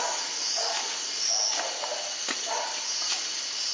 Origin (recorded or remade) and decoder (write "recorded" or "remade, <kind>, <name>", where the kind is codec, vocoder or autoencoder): recorded